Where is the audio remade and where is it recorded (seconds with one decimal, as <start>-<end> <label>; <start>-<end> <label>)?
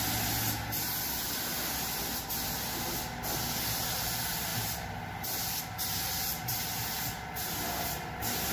0.0-8.5 recorded